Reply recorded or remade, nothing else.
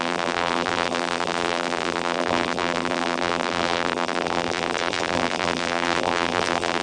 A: remade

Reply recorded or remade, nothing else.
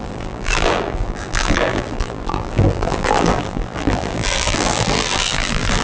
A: remade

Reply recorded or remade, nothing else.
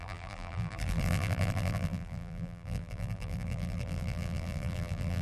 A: remade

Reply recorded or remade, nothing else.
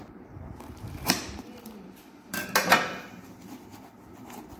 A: remade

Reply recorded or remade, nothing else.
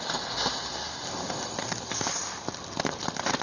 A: recorded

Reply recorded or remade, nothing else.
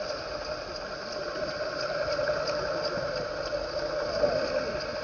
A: recorded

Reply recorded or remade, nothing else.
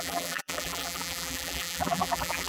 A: remade